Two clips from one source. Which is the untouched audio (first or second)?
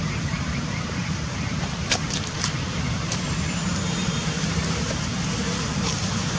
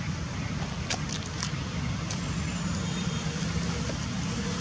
second